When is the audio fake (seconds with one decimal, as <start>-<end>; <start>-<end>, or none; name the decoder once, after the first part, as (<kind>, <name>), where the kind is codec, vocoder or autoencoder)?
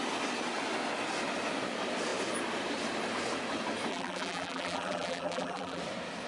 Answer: 3.9-5.8 (vocoder, BigVGAN v2)